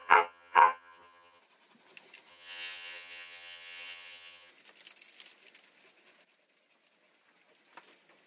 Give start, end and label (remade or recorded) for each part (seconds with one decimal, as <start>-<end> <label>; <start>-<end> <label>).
0.0-1.4 remade; 1.4-2.3 recorded; 2.3-4.5 remade; 4.5-8.3 recorded